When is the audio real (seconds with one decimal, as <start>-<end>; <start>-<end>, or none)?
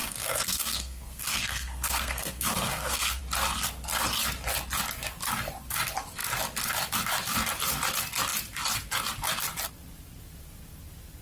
3.2-11.2